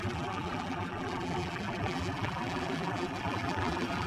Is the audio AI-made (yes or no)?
yes